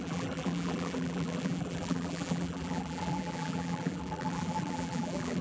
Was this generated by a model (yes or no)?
yes